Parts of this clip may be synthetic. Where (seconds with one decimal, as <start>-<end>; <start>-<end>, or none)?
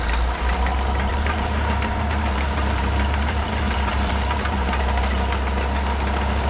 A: 1.1-5.0